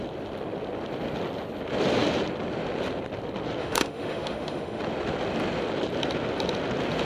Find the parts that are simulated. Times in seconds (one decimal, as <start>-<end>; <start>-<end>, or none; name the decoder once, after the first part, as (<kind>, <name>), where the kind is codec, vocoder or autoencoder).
3.6-4.8 (autoencoder, DAC-VAE)